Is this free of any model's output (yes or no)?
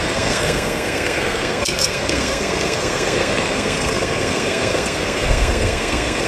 no